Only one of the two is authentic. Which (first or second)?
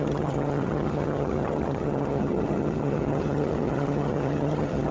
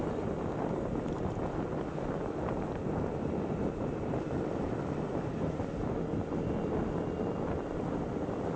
second